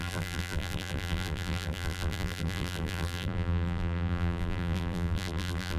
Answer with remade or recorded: remade